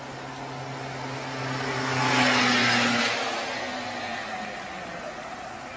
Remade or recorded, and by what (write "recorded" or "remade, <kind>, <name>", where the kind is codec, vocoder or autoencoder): recorded